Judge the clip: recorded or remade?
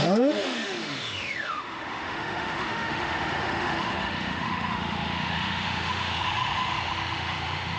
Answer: remade